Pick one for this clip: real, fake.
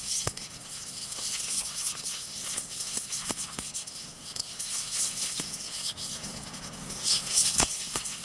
fake